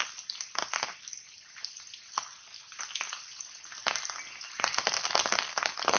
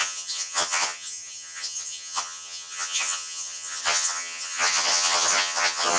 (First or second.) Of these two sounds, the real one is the first